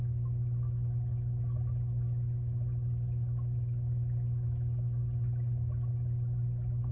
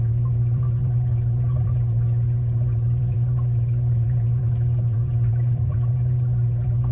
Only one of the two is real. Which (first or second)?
first